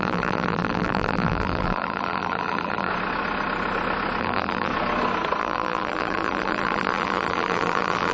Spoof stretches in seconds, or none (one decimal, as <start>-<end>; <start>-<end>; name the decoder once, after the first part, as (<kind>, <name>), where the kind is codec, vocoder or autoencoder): 0.0-2.9 (vocoder, BigVGAN v2); 4.2-4.7; 5.4-8.1